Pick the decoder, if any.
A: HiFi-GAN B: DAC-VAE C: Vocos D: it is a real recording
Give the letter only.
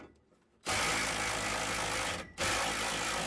D